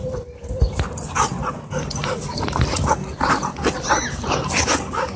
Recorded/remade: recorded